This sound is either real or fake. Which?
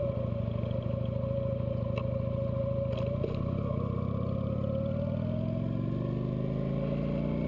real